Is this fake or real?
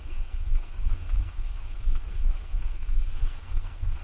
fake